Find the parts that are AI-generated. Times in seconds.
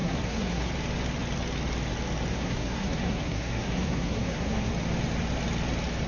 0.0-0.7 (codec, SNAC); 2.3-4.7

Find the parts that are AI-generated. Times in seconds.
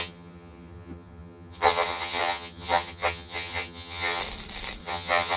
0.0-4.2 (vocoder, HiFi-GAN); 4.8-5.4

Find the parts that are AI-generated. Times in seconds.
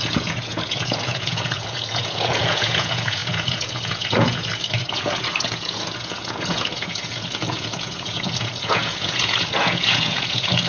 0.0-10.7 (vocoder, Vocos)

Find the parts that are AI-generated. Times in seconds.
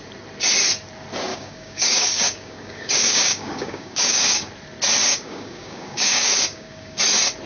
1.3-4.5 (codec, DAC); 5.0-7.0